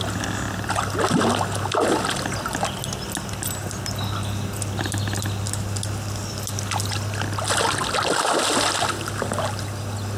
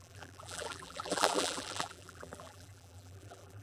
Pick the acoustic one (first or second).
first